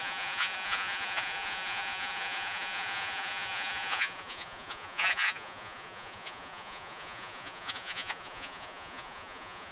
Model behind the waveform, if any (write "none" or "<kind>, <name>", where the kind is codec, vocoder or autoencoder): vocoder, Vocos